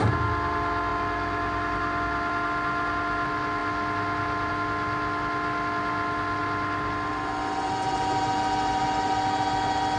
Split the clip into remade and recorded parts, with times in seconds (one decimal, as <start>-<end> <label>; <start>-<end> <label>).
0.0-10.0 recorded